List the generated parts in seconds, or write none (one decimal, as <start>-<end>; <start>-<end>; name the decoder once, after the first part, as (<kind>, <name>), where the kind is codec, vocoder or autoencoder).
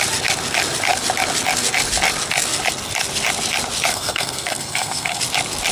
3.9-5.2 (codec, SNAC)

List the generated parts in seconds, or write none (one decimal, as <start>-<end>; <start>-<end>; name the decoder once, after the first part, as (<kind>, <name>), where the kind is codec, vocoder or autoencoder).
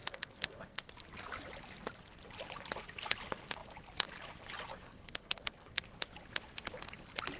0.0-0.9 (codec, SNAC); 4.7-5.9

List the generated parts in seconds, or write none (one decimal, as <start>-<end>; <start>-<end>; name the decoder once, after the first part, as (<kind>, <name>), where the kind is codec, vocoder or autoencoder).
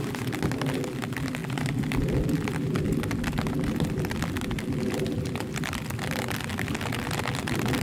none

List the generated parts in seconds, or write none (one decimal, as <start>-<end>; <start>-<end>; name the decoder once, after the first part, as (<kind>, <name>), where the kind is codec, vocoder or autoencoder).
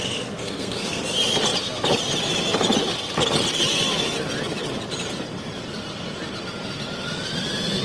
0.0-1.0 (codec, SNAC)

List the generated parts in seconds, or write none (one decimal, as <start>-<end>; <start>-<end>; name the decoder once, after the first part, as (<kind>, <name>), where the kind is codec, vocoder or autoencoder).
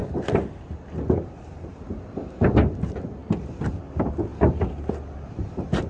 none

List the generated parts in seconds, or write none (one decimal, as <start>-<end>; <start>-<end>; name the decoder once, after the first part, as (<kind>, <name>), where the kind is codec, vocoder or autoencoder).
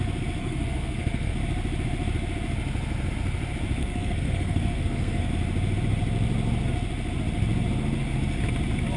0.4-1.3 (codec, SNAC); 3.8-5.3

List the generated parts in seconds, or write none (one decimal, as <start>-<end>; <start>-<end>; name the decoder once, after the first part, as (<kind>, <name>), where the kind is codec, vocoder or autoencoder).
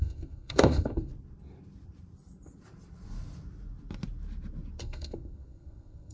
0.0-1.1 (codec, SNAC); 4.8-6.1